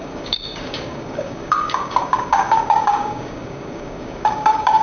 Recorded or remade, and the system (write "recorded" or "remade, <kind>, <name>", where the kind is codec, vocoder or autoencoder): remade, codec, DAC